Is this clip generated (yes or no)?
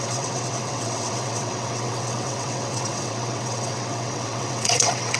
yes